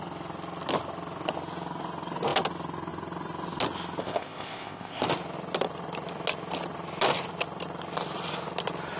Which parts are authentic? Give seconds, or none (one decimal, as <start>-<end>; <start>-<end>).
0.0-4.0; 5.0-9.0